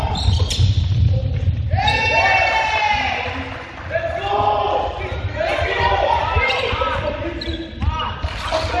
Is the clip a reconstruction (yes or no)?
no